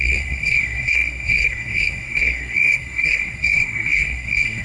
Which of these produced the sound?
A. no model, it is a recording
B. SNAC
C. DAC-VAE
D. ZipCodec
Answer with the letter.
B